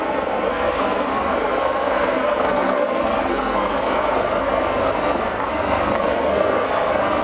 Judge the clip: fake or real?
fake